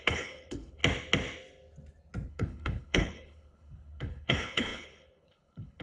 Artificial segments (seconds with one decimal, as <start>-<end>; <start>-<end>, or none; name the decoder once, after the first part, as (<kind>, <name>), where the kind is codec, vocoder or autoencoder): 0.0-0.8 (codec, HILCodec); 2.3-5.8